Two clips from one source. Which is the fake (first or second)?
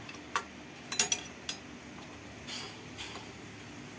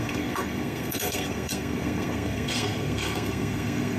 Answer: second